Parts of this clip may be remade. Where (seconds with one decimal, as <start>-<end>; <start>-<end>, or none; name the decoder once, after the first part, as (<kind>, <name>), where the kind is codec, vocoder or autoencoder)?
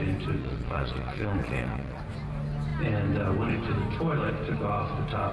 0.4-2.0 (vocoder, Vocos)